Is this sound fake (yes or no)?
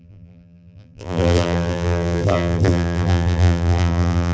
yes